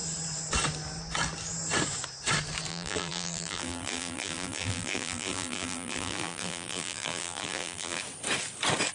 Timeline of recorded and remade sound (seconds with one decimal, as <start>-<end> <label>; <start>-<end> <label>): 0.0-2.7 recorded; 2.7-8.0 remade; 8.0-8.9 recorded